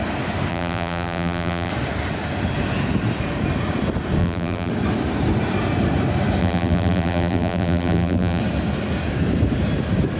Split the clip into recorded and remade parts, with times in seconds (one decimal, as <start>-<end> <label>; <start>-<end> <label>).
0.0-0.5 recorded; 0.5-1.7 remade; 1.7-4.2 recorded; 4.2-4.7 remade; 4.7-6.4 recorded; 6.4-8.4 remade; 8.4-10.2 recorded